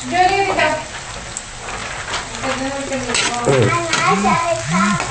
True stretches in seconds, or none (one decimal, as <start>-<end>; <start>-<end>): 0.0-5.1